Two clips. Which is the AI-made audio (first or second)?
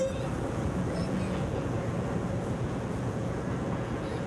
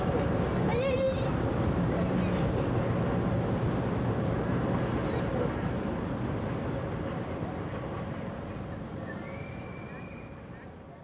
first